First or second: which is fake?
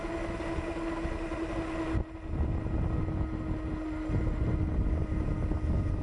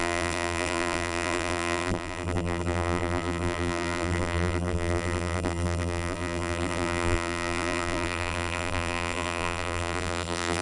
second